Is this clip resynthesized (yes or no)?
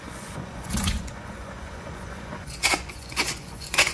yes